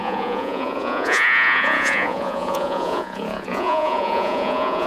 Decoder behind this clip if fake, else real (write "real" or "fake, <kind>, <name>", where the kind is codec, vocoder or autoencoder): fake, vocoder, Vocos